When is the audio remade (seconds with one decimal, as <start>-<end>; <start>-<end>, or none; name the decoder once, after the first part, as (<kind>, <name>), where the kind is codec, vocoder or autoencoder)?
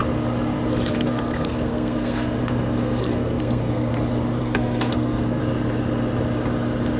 0.9-3.9 (codec, SNAC); 4.4-5.4